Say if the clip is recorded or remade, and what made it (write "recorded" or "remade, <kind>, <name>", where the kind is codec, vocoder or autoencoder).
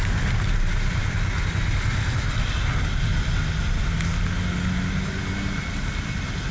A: recorded